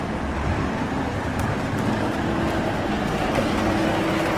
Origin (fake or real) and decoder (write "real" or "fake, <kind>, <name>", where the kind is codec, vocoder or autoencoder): real